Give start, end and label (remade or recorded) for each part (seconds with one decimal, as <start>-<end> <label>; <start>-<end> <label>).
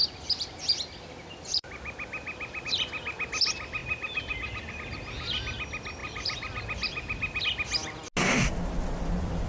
0.0-2.6 remade; 2.6-3.8 recorded; 3.8-4.7 remade; 4.7-6.0 recorded; 6.0-7.4 remade; 7.4-9.5 recorded